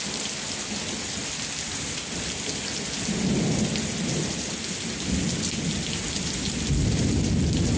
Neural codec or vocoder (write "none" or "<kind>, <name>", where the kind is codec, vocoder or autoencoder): none